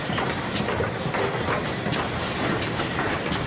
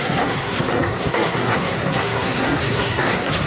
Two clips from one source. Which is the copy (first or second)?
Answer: second